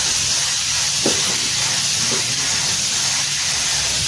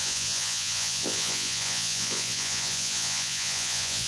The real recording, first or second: first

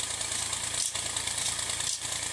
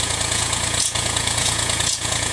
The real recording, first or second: first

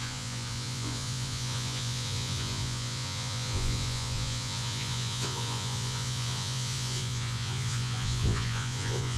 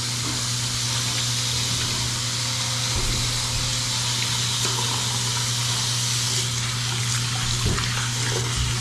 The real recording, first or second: second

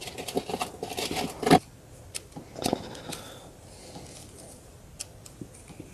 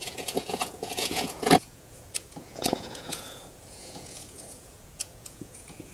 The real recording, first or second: first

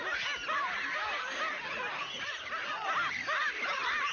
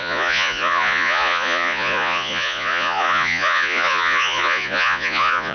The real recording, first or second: first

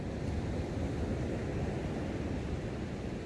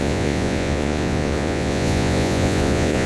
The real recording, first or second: first